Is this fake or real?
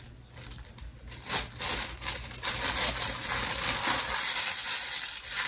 real